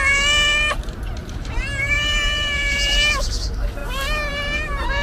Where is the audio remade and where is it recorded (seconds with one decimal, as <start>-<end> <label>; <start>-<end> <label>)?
0.0-1.2 recorded; 1.2-3.3 remade; 3.3-5.0 recorded